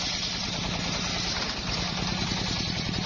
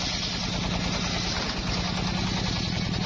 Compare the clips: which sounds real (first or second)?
second